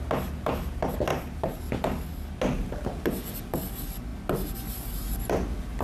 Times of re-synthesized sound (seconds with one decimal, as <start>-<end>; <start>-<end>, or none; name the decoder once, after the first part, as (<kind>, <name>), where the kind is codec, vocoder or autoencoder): 1.1-1.6 (vocoder, BigVGAN v2)